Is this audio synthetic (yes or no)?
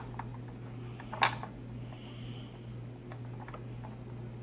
no